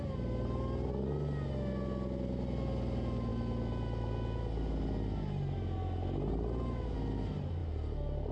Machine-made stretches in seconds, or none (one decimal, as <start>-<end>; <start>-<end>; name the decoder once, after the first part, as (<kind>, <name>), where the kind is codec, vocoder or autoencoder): none